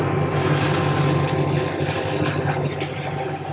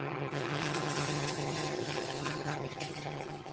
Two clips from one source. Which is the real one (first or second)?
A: first